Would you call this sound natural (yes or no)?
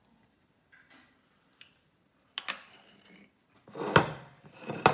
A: yes